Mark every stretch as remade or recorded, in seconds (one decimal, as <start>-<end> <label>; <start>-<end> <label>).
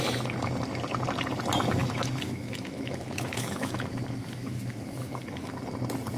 0.0-1.8 recorded; 1.8-5.5 remade; 5.5-6.2 recorded